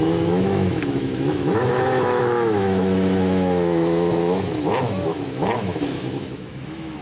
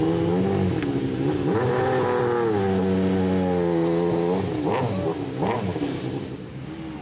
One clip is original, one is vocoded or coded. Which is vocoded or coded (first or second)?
first